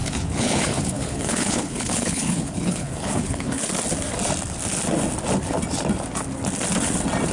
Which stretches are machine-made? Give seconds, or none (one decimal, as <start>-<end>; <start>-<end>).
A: 0.0-3.7